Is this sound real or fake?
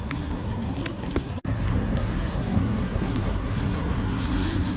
fake